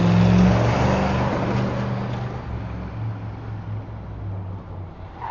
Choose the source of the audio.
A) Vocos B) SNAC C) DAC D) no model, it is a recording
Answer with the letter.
D